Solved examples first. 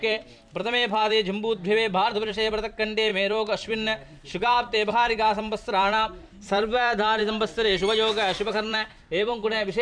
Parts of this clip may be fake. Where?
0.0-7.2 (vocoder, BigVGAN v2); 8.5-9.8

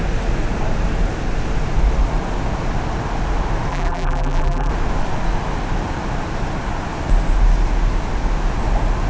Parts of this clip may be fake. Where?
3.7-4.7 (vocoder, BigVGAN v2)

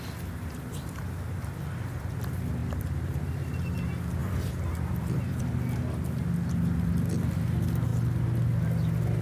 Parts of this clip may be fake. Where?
2.6-3.5 (vocoder, BigVGAN v2); 4.2-5.4